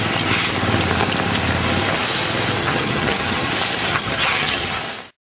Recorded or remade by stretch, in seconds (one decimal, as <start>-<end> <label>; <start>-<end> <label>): 0.0-2.6 recorded; 2.6-3.5 remade; 3.5-3.9 recorded; 3.9-4.8 remade; 4.8-5.3 recorded